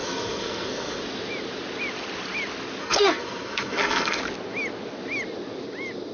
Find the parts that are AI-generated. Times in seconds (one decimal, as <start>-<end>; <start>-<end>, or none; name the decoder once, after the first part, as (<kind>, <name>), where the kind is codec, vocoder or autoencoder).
0.0-1.0 (codec, SNAC); 2.8-4.2